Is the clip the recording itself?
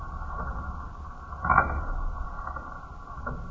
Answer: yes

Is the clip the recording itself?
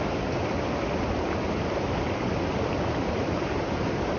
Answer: yes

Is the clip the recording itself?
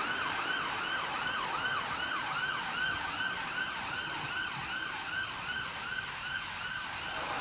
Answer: yes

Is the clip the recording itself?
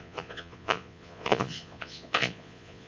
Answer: no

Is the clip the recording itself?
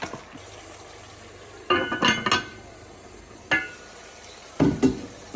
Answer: yes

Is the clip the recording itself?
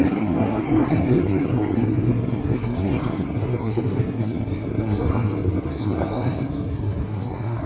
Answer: no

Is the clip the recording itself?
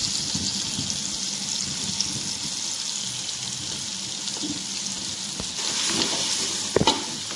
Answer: yes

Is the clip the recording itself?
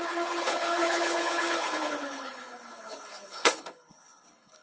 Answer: no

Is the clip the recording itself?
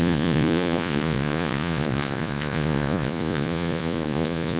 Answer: no